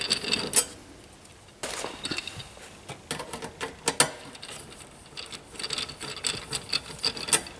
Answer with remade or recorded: recorded